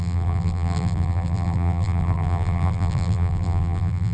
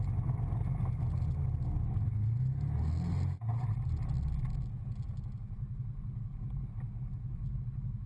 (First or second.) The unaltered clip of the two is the second